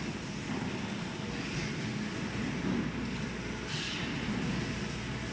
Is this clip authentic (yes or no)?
yes